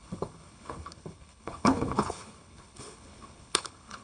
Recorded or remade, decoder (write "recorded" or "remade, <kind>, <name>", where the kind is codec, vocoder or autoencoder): remade, codec, HILCodec